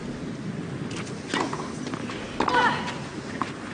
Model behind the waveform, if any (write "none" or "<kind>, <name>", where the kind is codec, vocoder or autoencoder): none